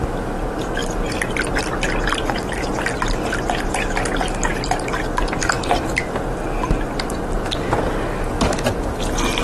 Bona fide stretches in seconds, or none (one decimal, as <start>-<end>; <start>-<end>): 0.0-9.4